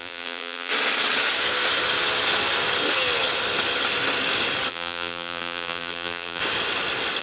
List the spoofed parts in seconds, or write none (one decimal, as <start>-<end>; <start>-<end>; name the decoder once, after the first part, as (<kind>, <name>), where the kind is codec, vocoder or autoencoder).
0.0-0.7 (vocoder, BigVGAN v2); 4.7-6.4